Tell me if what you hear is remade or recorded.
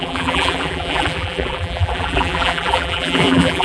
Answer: remade